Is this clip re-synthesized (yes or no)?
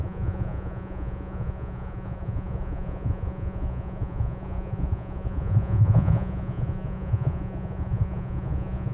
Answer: yes